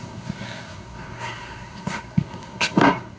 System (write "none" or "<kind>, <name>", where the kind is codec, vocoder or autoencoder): codec, SNAC